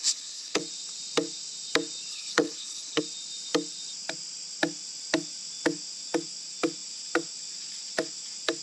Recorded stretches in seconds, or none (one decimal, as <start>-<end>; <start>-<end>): 0.6-2.1; 3.0-8.6